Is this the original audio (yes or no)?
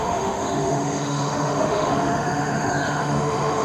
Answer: no